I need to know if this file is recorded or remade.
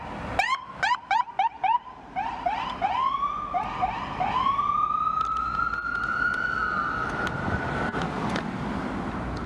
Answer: recorded